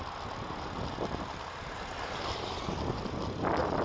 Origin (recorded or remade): recorded